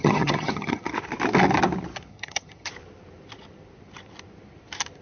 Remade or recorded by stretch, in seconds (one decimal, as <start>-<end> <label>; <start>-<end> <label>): 0.0-0.9 remade; 0.9-2.1 recorded; 2.1-2.7 remade; 2.7-5.0 recorded